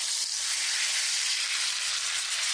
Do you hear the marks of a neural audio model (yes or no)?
no